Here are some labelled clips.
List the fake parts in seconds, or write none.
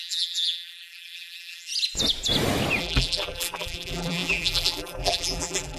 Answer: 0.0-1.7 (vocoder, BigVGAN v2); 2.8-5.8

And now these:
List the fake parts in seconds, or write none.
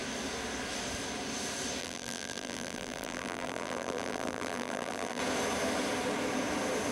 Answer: 1.8-5.2 (vocoder, BigVGAN v2)